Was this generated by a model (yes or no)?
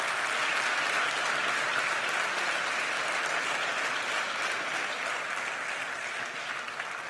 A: no